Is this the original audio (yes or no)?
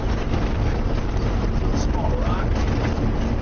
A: yes